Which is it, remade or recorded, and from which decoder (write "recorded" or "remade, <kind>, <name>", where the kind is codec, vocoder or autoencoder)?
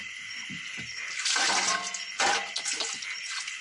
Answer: recorded